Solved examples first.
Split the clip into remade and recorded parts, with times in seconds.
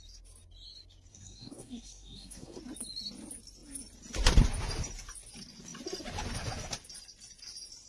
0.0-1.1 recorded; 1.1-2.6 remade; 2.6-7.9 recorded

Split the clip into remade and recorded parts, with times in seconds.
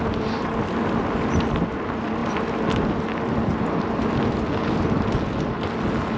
0.0-6.2 recorded